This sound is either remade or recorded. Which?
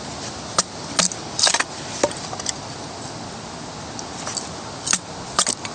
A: recorded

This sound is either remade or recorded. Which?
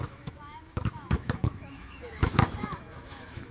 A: remade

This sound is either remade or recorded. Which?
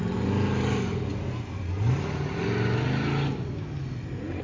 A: recorded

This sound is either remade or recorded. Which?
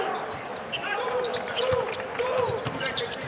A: recorded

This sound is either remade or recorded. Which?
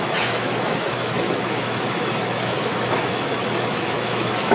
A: remade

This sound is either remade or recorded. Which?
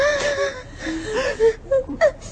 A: recorded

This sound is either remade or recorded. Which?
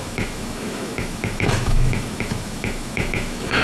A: remade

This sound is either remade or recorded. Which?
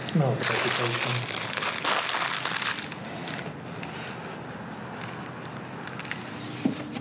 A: recorded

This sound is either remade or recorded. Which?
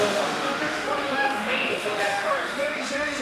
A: remade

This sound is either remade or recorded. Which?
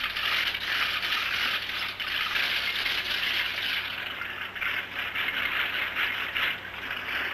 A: recorded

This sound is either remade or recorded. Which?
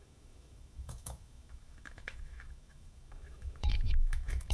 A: remade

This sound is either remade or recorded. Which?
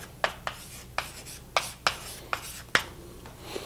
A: recorded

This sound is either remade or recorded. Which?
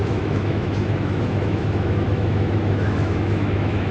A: remade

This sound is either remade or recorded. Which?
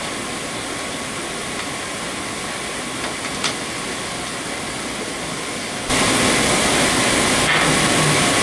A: recorded